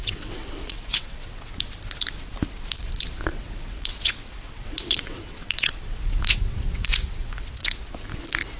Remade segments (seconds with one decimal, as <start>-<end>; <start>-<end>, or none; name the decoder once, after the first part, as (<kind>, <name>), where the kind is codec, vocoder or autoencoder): 0.0-1.5 (vocoder, WaveNeXt); 3.3-7.8